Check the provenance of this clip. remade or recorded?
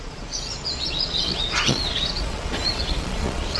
remade